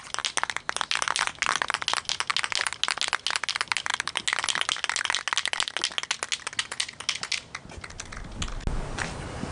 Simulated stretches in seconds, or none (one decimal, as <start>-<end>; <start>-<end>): none